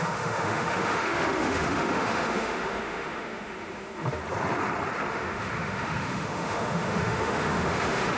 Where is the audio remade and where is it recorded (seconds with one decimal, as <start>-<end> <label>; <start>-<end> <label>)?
0.0-4.2 remade; 4.2-5.1 recorded; 5.1-8.2 remade